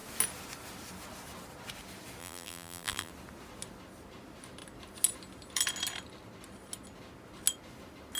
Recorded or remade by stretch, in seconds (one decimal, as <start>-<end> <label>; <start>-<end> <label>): 0.0-2.2 recorded; 2.2-3.1 remade; 3.1-8.2 recorded